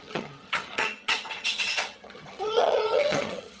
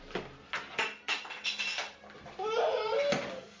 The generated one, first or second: first